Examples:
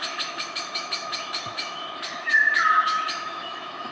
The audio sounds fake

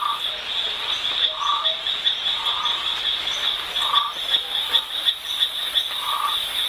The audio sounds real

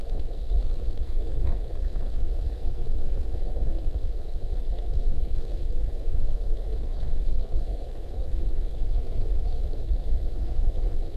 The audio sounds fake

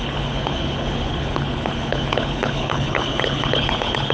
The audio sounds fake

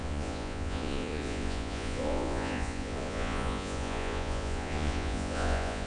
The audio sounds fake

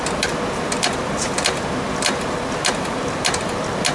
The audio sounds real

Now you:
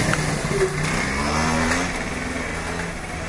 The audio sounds real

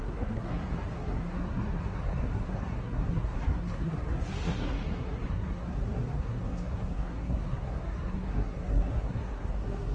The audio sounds fake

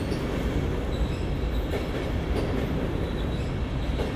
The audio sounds real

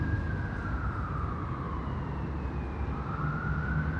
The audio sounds real